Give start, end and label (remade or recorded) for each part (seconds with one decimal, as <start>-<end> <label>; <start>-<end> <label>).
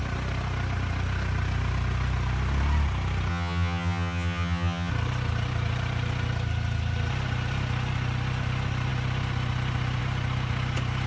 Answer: 0.0-3.3 recorded; 3.3-4.9 remade; 4.9-11.1 recorded